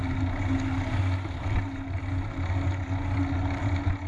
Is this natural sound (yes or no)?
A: yes